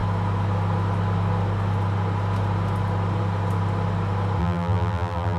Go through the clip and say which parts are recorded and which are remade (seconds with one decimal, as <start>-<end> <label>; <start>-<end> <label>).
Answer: 0.0-4.4 recorded; 4.4-5.4 remade